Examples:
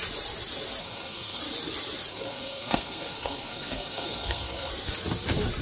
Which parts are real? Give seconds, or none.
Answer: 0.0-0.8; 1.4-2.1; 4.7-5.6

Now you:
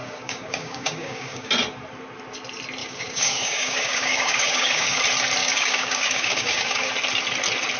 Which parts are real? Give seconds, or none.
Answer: 1.5-2.8; 5.0-5.4; 6.9-7.8

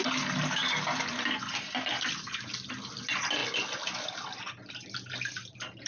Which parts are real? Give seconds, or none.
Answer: 0.0-5.9

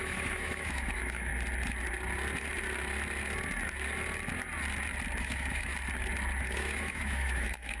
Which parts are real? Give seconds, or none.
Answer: 1.3-5.2; 5.7-6.4

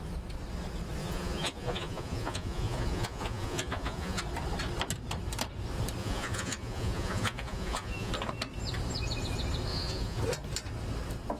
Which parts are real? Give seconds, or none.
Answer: 0.0-1.0; 4.2-6.0; 8.1-9.7; 10.2-11.4

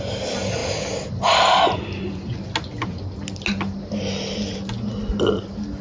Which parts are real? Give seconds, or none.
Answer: 0.0-5.8

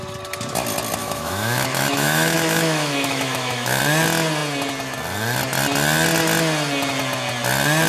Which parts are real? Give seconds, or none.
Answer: 0.0-1.0; 3.8-7.9

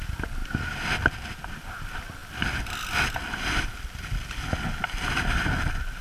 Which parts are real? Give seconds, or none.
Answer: 0.0-0.4; 0.9-6.0